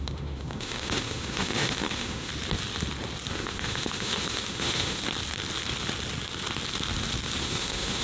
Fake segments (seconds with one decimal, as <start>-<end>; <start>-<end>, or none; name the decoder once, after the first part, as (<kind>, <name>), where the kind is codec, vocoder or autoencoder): 0.0-2.3 (autoencoder, DAC-VAE); 3.3-5.0; 7.4-8.0